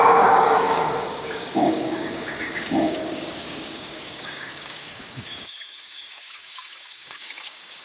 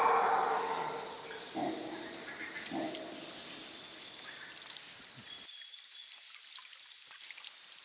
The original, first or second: second